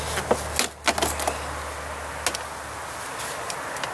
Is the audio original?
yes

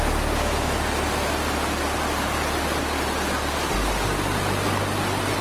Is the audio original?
yes